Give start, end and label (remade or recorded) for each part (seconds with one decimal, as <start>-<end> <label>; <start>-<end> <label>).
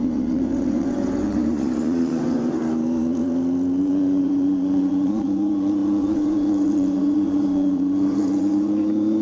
0.0-2.6 remade; 2.6-3.8 recorded; 3.8-9.2 remade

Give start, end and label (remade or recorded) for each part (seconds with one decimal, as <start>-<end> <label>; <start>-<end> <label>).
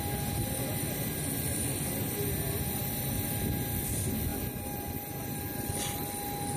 0.0-6.6 recorded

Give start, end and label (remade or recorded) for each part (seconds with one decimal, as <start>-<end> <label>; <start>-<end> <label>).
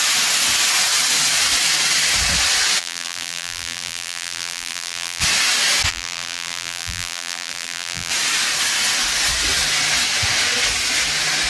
0.0-2.8 recorded; 2.8-5.2 remade; 5.2-5.9 recorded; 5.9-8.1 remade; 8.1-11.5 recorded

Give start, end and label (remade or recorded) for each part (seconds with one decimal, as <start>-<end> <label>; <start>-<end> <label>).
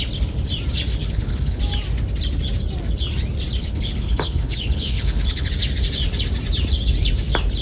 0.0-1.0 recorded; 1.0-1.6 remade; 1.6-3.6 recorded; 3.6-5.5 remade; 5.5-7.6 recorded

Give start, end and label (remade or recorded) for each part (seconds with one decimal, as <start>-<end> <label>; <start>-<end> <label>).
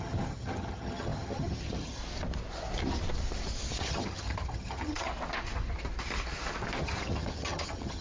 0.0-2.0 remade; 2.0-3.8 recorded; 3.8-5.1 remade; 5.1-6.8 recorded; 6.8-8.0 remade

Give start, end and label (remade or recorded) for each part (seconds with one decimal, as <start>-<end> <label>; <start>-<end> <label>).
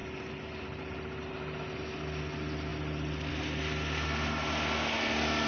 0.0-5.5 recorded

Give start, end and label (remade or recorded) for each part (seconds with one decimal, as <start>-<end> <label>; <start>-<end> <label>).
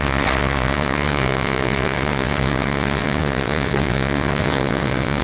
0.0-5.2 remade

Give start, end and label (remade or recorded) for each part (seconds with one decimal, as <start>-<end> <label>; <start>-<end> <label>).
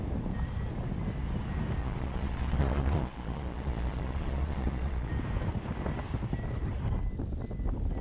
0.0-1.8 recorded; 1.8-5.1 remade; 5.1-8.0 recorded